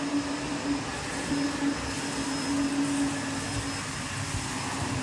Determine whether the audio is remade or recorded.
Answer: recorded